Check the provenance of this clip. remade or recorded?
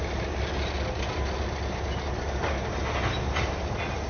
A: recorded